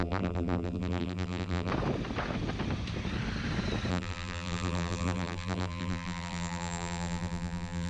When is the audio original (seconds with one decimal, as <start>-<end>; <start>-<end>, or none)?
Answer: 1.7-3.9